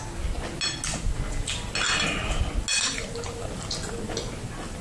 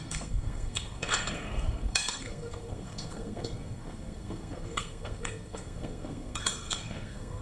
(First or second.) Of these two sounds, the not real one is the second